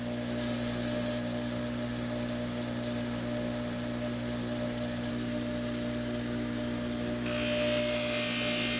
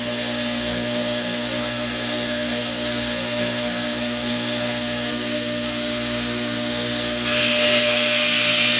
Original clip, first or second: first